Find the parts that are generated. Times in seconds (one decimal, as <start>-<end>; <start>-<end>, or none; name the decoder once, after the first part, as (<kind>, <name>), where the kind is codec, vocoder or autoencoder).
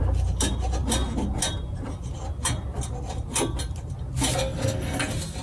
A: 4.4-5.0 (codec, SNAC)